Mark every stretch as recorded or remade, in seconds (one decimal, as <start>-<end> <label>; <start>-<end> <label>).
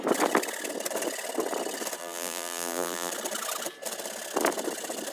0.0-2.0 recorded; 2.0-3.1 remade; 3.1-5.1 recorded